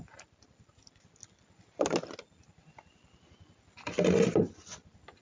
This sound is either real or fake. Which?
real